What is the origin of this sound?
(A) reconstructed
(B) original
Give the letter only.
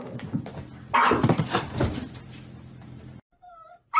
B